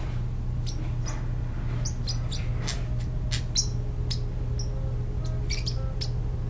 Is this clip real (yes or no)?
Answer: yes